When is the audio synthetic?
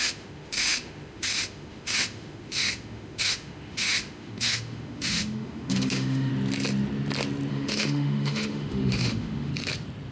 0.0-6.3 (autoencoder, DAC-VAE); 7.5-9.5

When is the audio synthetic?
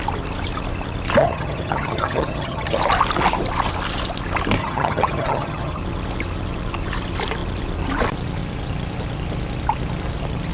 1.2-2.8 (vocoder, HiFi-GAN); 4.6-5.8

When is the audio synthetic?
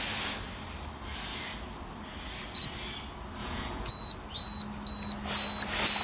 3.4-3.9 (vocoder, Vocos)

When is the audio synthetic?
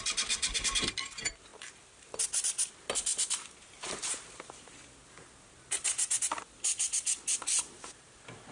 none